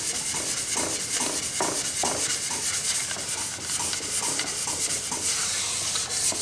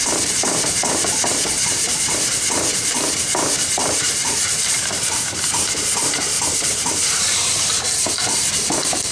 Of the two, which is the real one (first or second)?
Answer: first